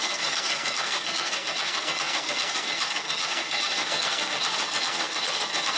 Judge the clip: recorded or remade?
remade